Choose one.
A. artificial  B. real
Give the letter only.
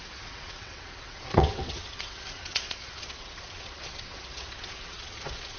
A